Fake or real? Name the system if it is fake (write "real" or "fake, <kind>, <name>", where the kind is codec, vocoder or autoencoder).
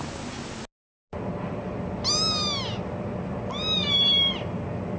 real